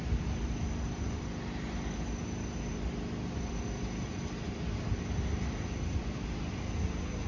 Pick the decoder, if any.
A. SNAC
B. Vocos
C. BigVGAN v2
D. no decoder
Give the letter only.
D